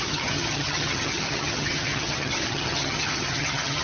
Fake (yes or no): yes